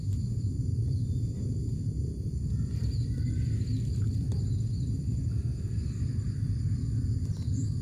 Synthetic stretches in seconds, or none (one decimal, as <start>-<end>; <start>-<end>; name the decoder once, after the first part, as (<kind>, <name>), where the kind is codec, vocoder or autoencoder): 0.7-5.1 (vocoder, BigVGAN v2); 5.8-6.7